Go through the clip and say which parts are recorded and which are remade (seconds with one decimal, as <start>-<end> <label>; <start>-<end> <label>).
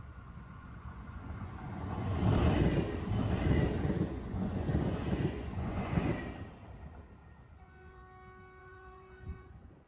0.0-2.2 remade; 2.2-3.9 recorded; 3.9-6.1 remade; 6.1-7.5 recorded; 7.5-8.0 remade; 8.0-8.6 recorded; 8.6-9.9 remade